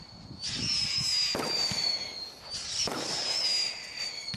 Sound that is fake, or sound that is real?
real